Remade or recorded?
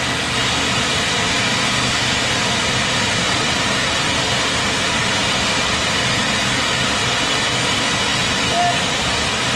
recorded